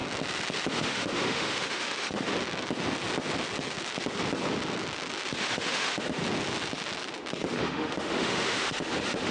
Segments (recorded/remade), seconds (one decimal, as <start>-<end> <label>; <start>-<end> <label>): 0.0-0.7 recorded; 0.7-2.3 remade; 2.3-5.3 recorded; 5.3-6.2 remade; 6.2-7.6 recorded; 7.6-9.3 remade